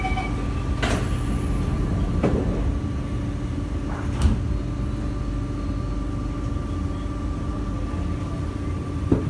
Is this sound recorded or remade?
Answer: recorded